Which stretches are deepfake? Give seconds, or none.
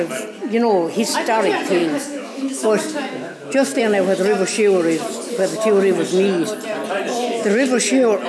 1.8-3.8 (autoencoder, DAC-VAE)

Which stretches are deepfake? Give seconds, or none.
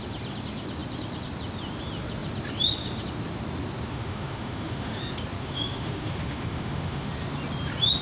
3.9-5.0 (autoencoder, DAC-VAE); 5.4-7.1